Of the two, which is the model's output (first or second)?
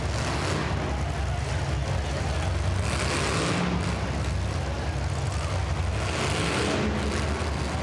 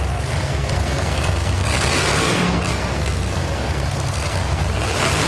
second